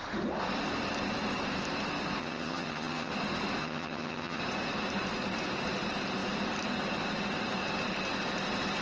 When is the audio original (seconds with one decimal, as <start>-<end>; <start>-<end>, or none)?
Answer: 0.0-2.2; 3.1-3.6; 4.4-8.8